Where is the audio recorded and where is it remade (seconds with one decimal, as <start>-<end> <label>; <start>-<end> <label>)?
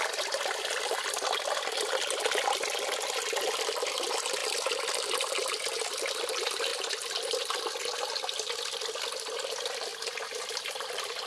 0.0-11.3 recorded